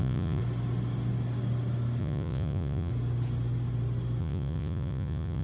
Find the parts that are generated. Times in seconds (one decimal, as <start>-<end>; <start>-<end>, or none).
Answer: 0.0-0.4; 2.0-2.9; 4.2-5.4